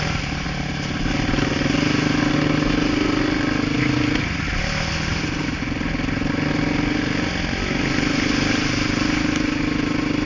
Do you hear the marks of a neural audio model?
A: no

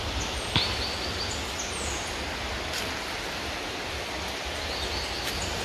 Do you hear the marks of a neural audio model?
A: no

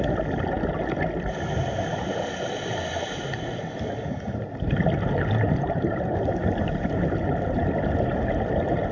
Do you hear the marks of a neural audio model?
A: no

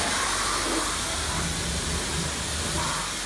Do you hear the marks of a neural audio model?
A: no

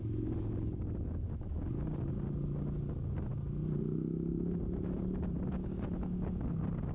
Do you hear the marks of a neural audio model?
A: no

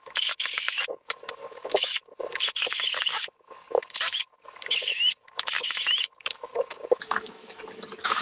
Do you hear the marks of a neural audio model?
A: yes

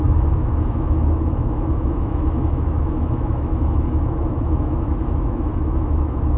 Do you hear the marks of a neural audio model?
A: yes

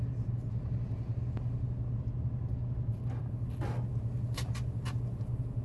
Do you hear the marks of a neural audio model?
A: no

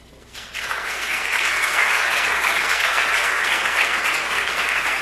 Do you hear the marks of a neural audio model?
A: yes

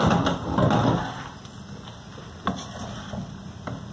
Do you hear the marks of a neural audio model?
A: no